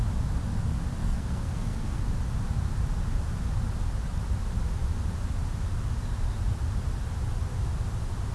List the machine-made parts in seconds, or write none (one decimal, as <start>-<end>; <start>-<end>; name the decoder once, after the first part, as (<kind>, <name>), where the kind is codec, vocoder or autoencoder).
1.0-2.0 (codec, SNAC)